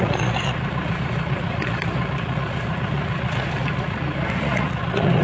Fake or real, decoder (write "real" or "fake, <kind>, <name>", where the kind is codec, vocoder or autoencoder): fake, vocoder, Vocos